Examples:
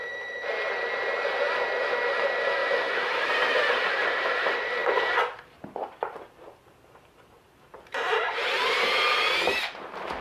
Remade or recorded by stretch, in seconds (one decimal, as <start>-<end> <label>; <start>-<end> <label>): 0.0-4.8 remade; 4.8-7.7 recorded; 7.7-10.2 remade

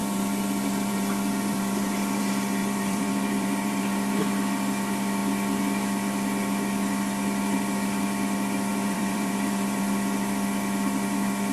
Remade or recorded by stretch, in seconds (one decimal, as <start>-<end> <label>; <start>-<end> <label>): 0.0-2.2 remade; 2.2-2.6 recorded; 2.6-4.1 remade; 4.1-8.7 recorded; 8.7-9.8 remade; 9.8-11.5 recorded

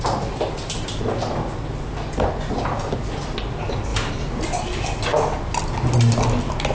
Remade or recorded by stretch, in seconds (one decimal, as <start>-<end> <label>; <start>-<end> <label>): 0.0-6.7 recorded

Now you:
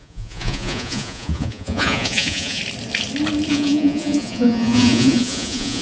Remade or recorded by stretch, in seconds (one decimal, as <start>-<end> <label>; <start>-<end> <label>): 0.0-2.6 remade; 2.6-3.5 recorded; 3.5-5.8 remade

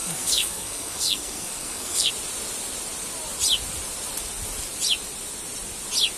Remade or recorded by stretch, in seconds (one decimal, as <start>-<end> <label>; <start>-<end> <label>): 0.0-2.1 remade; 2.1-6.2 recorded

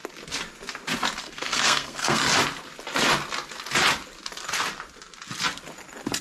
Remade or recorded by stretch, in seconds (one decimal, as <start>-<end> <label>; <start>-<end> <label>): 0.0-1.2 recorded; 1.2-2.2 remade; 2.2-6.2 recorded

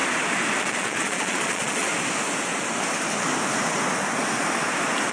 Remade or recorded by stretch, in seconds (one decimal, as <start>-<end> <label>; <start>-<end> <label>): 0.0-0.6 recorded; 0.6-1.9 remade; 1.9-5.1 recorded